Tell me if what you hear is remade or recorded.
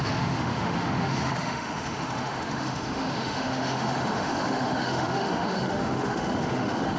remade